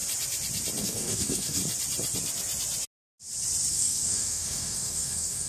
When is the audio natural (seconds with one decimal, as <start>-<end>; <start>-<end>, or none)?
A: 0.0-0.8; 1.6-3.7